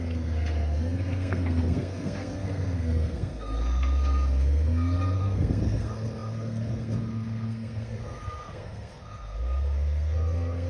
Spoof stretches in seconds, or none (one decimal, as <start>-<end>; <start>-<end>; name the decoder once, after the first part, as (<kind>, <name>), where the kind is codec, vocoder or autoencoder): 0.0-10.7 (codec, SNAC)